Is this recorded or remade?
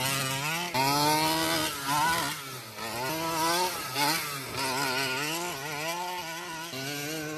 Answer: recorded